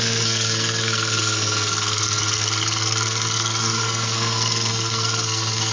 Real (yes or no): no